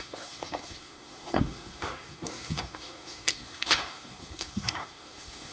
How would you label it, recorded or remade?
remade